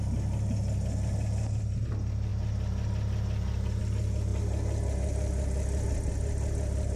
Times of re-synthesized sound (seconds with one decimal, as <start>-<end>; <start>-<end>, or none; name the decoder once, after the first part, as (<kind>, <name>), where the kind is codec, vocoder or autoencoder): none